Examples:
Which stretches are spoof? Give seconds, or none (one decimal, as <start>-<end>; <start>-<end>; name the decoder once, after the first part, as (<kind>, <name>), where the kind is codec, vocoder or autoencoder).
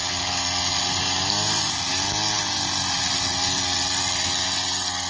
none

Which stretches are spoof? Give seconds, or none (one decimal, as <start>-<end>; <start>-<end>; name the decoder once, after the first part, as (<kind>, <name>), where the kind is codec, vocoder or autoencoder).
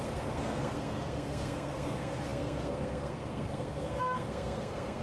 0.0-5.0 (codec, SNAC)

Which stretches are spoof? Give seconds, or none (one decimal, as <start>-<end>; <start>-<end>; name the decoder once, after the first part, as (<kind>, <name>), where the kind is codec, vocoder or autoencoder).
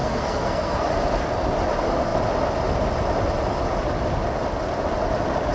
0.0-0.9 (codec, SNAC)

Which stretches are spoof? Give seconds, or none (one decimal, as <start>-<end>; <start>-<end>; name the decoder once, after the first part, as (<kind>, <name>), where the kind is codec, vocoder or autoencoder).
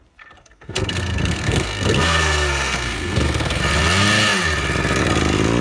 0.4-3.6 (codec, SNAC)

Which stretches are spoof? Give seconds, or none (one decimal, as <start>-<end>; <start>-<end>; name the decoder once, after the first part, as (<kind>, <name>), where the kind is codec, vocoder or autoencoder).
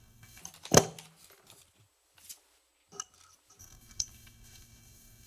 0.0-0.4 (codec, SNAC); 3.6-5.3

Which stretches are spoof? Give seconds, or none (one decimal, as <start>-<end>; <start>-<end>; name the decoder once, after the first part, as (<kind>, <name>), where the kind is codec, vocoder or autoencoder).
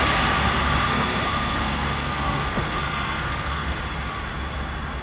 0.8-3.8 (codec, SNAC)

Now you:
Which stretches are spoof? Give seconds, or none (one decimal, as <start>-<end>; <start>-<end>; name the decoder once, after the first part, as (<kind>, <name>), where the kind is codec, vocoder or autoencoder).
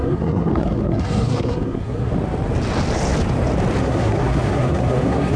0.0-2.1 (codec, SNAC); 3.8-5.4